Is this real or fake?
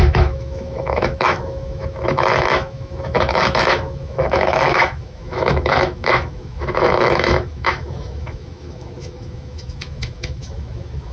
fake